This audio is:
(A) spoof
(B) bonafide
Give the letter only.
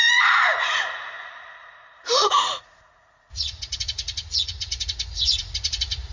A